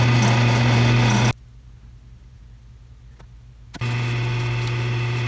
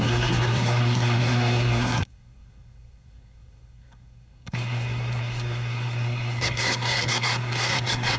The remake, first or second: second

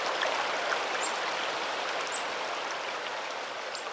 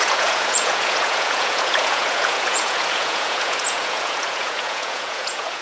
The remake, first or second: second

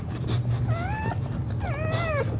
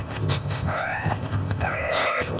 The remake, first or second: second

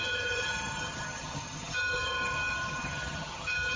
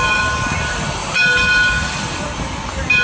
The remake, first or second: first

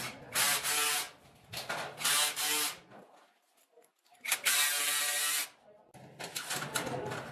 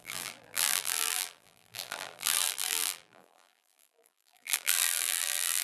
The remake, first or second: second